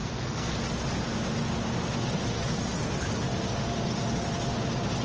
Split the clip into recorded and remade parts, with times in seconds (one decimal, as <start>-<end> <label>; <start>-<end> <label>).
0.0-0.5 remade; 0.5-5.0 recorded